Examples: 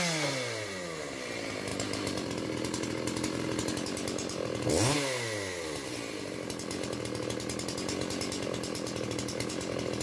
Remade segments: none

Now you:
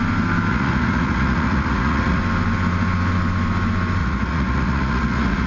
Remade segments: 0.5-2.2 (vocoder, Vocos); 4.0-5.5

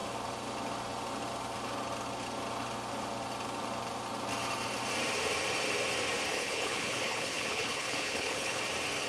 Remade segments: 6.3-8.6 (codec, HILCodec)

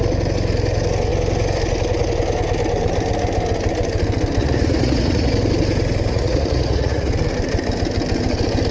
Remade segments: 4.4-5.3 (vocoder, Vocos); 6.1-7.1